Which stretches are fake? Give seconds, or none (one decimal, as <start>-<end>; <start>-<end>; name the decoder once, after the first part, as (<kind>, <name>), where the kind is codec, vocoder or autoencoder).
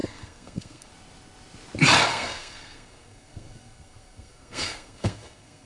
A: 0.0-0.9 (codec, SNAC); 2.1-5.7